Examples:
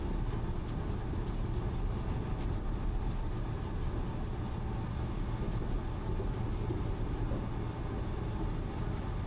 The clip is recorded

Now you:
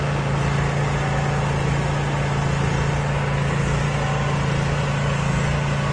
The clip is recorded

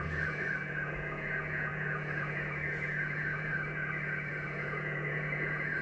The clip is remade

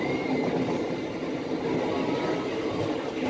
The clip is recorded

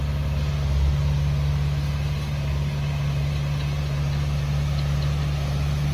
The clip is recorded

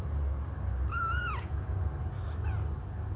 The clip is recorded